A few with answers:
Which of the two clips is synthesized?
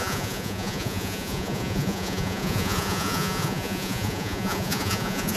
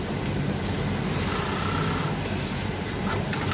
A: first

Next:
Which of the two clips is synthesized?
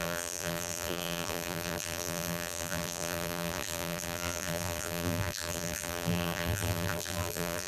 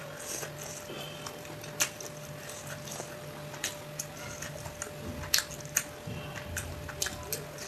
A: first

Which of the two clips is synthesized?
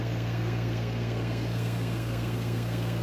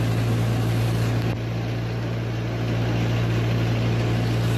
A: first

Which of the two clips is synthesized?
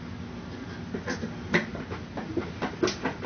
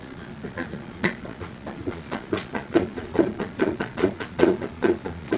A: second